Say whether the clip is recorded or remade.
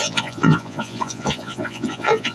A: remade